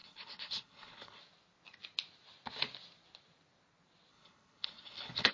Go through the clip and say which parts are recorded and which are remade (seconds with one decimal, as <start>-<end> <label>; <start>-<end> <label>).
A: 0.0-1.2 remade; 1.2-4.1 recorded; 4.1-5.3 remade